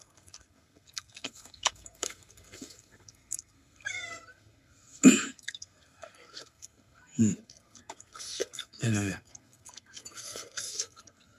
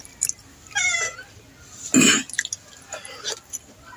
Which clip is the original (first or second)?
second